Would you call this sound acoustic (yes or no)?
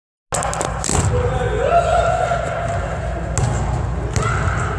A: yes